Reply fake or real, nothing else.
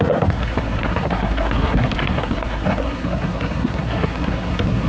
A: fake